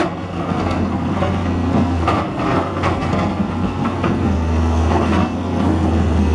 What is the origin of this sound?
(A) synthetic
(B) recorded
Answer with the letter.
A